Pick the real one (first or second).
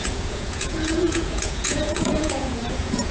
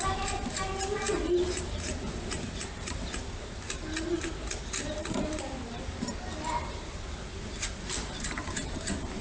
second